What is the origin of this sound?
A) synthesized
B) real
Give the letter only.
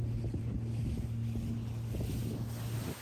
B